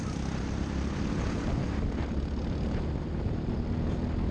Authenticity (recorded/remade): recorded